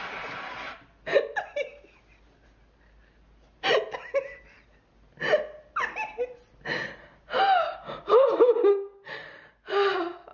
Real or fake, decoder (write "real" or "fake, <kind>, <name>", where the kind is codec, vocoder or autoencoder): real